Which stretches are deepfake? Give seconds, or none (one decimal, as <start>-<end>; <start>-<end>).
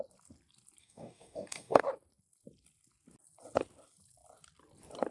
0.8-1.8